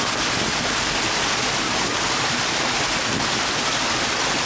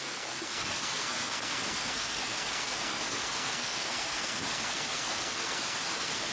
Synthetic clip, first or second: second